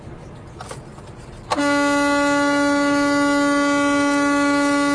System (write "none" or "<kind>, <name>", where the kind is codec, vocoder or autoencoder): none